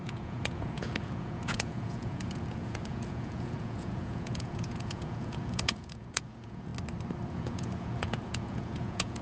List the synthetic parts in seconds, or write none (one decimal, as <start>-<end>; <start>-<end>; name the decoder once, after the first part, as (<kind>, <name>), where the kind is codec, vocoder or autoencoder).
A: 0.0-6.7 (vocoder, Vocos); 7.3-9.2